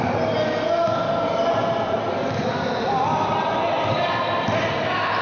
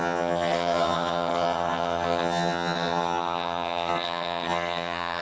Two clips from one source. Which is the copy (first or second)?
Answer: second